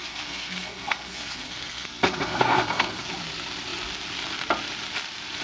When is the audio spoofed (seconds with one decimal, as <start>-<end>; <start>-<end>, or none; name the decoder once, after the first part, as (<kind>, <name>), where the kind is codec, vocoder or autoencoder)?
0.0-3.1 (codec, SNAC)